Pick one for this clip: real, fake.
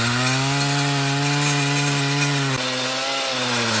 real